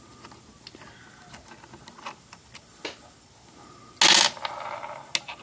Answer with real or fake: real